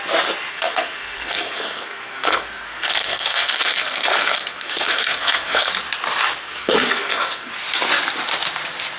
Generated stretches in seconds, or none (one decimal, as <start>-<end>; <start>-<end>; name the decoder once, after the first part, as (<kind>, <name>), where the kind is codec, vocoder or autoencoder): 0.5-5.7 (codec, SNAC); 6.4-7.5